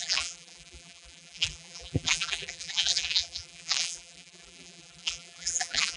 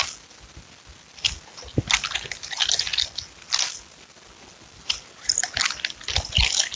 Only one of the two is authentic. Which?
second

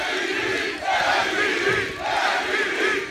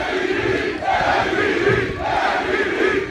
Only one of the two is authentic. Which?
first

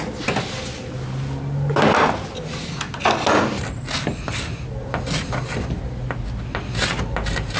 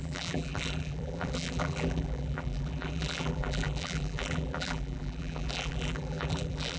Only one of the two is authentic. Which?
first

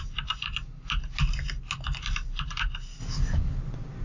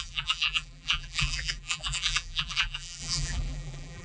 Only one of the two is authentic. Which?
first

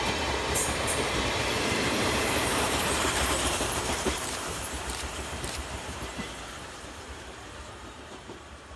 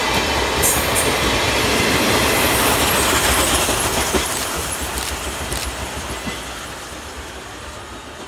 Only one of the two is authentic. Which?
second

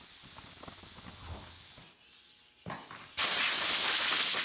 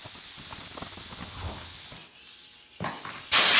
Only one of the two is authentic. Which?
first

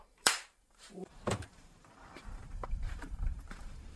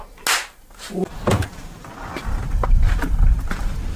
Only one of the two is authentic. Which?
second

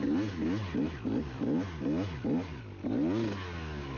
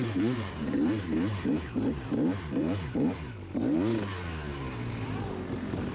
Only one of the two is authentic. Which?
first